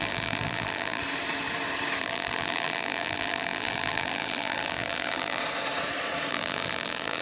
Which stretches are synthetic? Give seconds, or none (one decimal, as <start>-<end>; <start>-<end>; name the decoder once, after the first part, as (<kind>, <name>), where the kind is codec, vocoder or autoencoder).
0.0-1.0 (vocoder, BigVGAN v2); 2.0-5.4; 6.3-7.2